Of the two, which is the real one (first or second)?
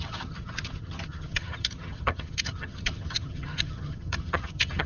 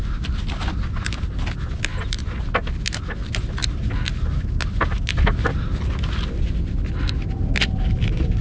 second